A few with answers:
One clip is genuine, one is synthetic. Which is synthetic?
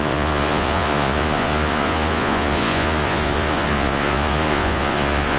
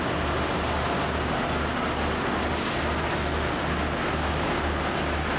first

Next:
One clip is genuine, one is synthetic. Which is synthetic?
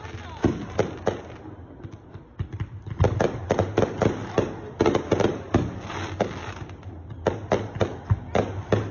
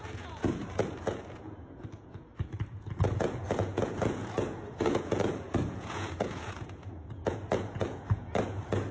second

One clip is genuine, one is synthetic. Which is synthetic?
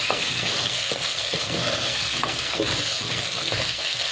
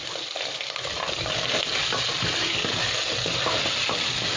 first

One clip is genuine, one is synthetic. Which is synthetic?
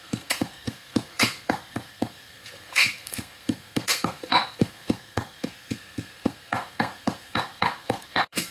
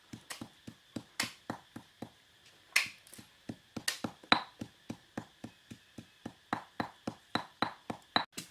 first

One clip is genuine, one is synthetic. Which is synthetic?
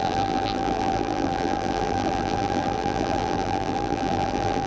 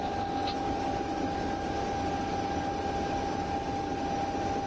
first